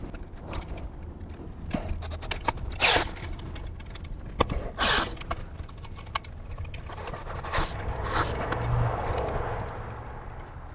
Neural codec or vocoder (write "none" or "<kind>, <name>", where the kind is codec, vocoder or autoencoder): none